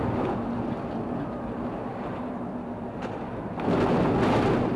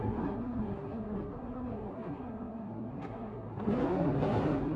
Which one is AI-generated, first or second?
second